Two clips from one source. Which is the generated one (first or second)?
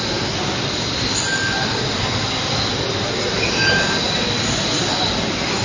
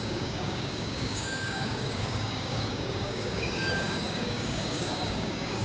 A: second